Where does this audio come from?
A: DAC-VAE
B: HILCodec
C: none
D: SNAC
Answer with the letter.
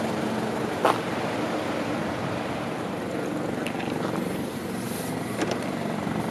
C